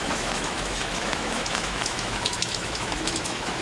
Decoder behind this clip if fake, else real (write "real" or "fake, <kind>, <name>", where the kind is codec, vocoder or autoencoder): fake, autoencoder, DAC-VAE